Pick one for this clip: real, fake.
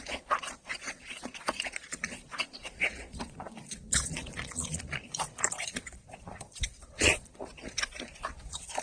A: fake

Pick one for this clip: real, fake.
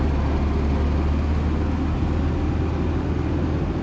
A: real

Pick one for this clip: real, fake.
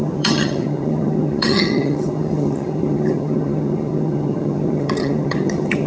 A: fake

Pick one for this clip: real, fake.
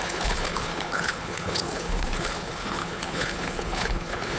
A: fake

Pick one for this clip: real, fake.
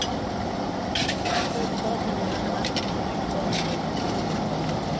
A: real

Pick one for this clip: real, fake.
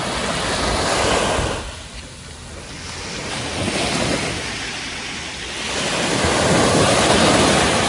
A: real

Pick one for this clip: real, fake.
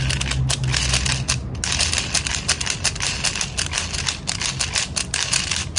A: real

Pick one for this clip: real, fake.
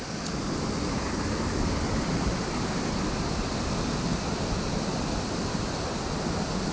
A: real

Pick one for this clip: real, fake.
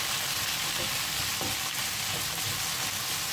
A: real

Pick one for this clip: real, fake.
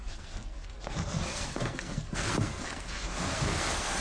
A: fake